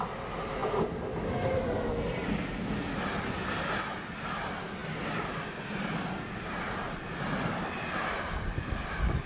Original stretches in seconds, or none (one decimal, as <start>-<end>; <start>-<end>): 0.0-9.3